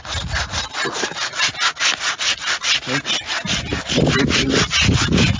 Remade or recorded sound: recorded